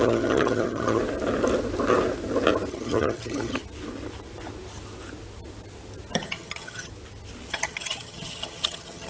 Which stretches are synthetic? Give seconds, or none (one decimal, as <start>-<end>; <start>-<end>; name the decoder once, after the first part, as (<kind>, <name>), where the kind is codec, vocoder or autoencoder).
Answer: 0.0-1.0 (vocoder, HiFi-GAN); 2.7-3.6; 6.2-6.9; 7.5-9.1